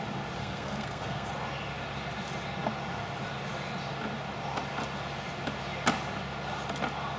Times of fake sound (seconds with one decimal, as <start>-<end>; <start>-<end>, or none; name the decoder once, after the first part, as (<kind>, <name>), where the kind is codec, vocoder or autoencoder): 0.4-1.3 (codec, SNAC)